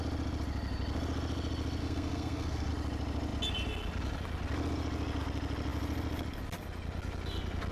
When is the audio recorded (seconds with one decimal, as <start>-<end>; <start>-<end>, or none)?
0.0-1.8; 2.7-7.7